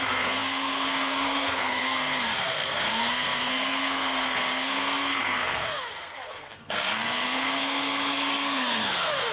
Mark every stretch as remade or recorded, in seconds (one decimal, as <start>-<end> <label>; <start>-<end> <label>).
0.0-9.3 remade